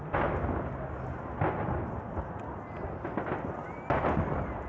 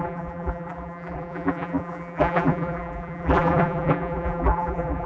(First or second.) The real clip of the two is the first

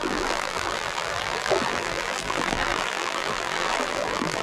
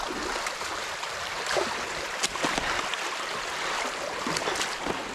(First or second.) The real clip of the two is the second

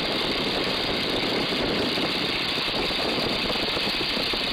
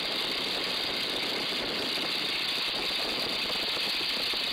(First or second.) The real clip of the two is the second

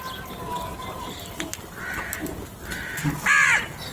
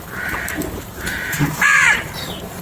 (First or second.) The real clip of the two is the first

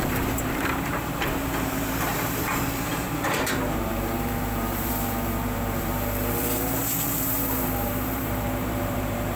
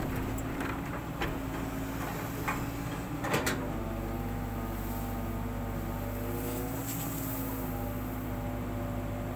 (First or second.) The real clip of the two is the second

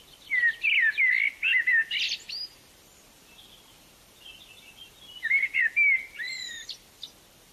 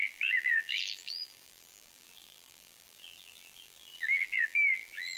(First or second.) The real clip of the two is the first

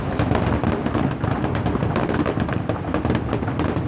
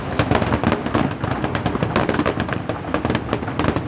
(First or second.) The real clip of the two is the second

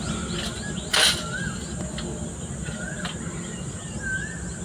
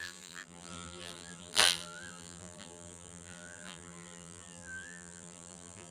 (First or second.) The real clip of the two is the first